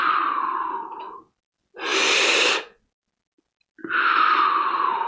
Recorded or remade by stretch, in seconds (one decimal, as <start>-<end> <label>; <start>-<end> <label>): 0.0-5.1 recorded